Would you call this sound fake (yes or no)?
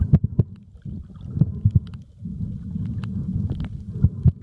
no